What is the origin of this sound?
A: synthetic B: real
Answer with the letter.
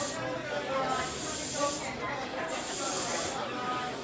B